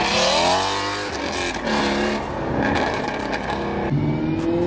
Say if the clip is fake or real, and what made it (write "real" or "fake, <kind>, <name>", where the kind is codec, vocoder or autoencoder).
real